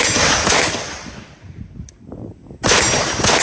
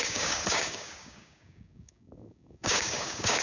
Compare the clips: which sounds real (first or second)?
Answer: first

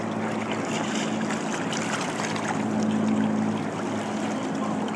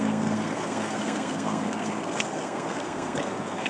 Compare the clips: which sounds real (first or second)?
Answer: first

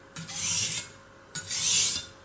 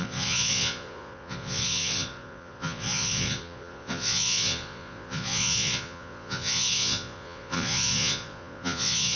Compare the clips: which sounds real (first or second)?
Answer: first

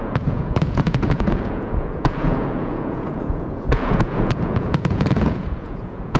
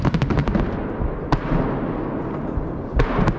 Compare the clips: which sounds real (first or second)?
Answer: second